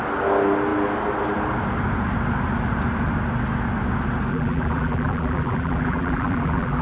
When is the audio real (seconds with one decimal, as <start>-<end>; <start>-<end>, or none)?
0.0-4.3